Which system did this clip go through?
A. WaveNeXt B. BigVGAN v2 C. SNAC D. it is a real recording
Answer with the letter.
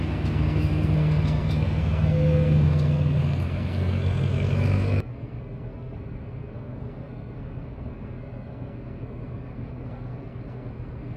C